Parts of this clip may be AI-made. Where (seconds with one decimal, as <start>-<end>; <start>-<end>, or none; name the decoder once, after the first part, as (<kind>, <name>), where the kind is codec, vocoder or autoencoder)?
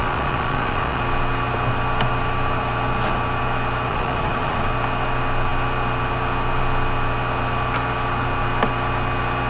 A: 0.0-1.0 (vocoder, Vocos); 3.9-4.7